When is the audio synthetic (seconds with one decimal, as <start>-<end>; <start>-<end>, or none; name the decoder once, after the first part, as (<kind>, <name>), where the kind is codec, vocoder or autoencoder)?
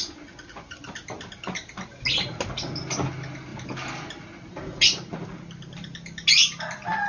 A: none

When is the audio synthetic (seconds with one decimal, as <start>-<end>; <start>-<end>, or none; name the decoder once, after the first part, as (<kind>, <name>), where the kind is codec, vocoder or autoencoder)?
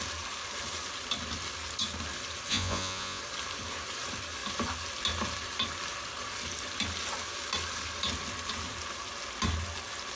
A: 2.5-3.2 (vocoder, Vocos)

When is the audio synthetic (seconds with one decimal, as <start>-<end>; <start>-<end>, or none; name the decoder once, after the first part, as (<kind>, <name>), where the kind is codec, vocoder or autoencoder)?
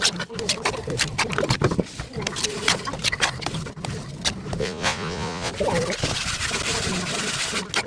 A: 4.6-5.5 (vocoder, Vocos)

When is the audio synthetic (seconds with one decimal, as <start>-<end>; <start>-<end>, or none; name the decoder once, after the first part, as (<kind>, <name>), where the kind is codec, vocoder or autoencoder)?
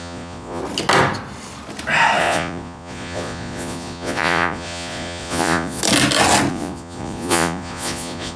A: 0.0-0.6 (vocoder, Vocos); 2.2-5.8; 6.5-8.4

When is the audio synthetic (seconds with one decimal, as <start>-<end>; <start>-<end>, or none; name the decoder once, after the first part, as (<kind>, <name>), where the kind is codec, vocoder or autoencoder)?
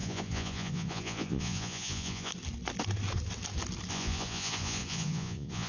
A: 0.0-2.3 (vocoder, Vocos); 3.9-5.7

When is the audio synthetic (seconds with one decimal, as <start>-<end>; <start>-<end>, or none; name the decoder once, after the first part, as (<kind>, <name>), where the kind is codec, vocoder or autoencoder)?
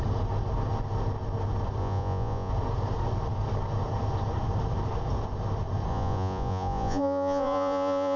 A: 1.8-2.5 (vocoder, Vocos); 5.9-8.2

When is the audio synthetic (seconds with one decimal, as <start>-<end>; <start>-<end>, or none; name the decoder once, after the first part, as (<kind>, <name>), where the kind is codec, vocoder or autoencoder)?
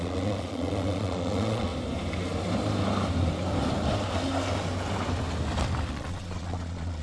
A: 0.0-1.7 (vocoder, Vocos); 5.9-7.0